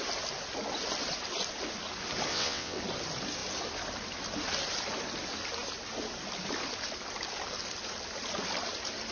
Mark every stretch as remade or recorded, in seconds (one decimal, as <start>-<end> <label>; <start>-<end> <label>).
0.0-2.3 recorded; 2.3-2.8 remade; 2.8-9.1 recorded

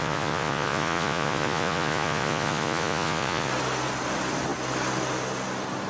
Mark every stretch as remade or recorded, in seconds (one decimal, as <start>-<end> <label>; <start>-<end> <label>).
0.0-3.5 remade; 3.5-5.9 recorded

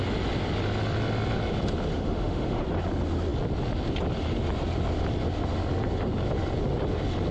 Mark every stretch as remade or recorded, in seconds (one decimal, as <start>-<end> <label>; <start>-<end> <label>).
0.0-1.9 recorded; 1.9-2.6 remade; 2.6-7.3 recorded

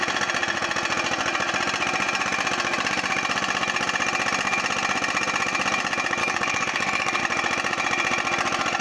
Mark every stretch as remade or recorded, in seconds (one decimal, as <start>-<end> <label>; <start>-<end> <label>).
0.0-6.2 recorded; 6.2-7.2 remade; 7.2-8.8 recorded